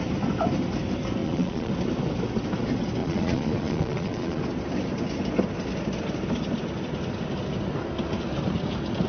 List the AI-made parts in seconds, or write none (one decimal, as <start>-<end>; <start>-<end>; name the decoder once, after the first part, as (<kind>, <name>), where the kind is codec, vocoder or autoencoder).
1.2-1.7 (vocoder, Vocos); 3.0-4.4